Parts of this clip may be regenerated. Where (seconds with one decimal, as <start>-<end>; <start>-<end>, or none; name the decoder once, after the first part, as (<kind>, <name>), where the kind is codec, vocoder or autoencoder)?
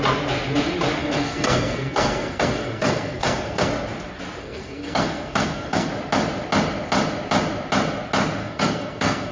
1.0-3.7 (codec, SNAC); 4.4-5.9; 8.4-9.3